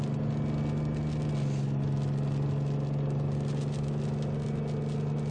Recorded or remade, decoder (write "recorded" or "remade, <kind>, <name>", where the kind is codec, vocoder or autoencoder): recorded